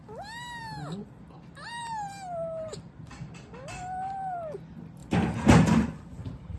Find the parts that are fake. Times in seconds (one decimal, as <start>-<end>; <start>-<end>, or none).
none